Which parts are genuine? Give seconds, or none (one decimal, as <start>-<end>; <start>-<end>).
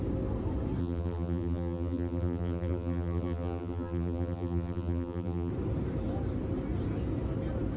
0.0-0.8; 5.5-7.8